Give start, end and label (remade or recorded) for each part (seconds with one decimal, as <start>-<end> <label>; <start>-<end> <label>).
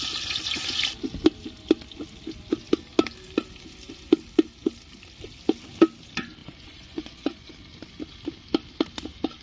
0.0-6.4 recorded; 6.4-7.5 remade; 7.5-9.4 recorded